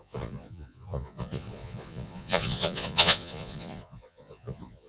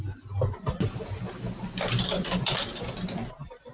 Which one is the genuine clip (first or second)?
second